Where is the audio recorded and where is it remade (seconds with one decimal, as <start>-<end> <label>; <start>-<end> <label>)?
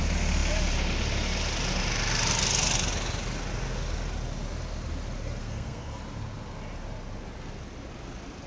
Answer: 0.0-5.4 recorded; 5.4-6.0 remade; 6.0-8.5 recorded